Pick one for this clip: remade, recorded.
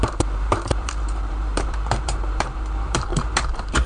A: remade